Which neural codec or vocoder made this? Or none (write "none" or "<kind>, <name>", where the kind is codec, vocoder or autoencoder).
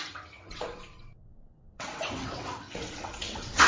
vocoder, WaveNeXt